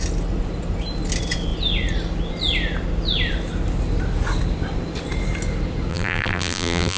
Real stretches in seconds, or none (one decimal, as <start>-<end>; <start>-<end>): 0.0-5.9